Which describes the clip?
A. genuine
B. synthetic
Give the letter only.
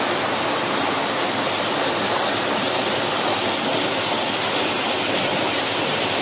A